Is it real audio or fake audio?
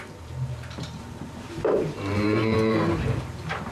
fake